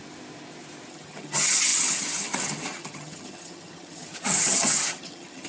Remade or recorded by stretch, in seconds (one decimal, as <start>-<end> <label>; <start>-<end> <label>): 0.0-0.9 recorded; 0.9-5.5 remade